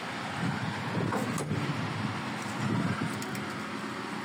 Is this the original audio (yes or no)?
yes